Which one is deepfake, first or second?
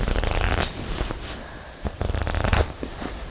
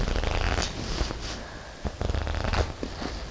first